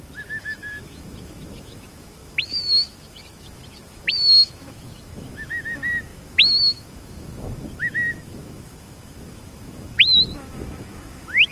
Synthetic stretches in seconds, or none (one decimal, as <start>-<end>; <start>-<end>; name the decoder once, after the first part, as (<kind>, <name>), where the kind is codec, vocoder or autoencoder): 0.0-11.5 (autoencoder, DAC-VAE)